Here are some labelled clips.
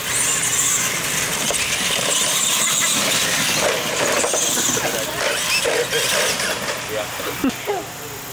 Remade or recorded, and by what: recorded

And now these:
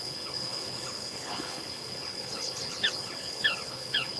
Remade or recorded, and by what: remade, codec, HILCodec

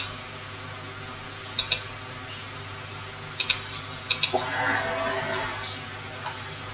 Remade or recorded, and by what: recorded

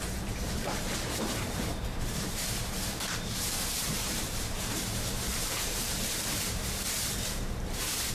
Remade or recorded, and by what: remade, vocoder, BigVGAN v2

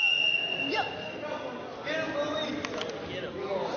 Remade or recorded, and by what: recorded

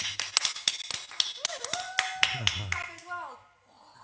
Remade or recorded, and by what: recorded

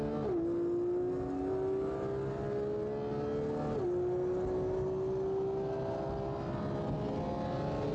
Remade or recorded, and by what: recorded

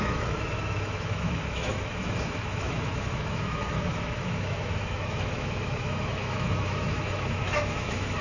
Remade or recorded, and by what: remade, autoencoder, DAC-VAE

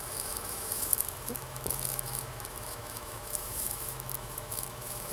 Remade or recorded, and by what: remade, autoencoder, DAC-VAE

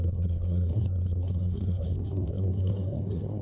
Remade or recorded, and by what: remade, codec, SNAC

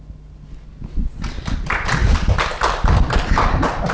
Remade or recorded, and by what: recorded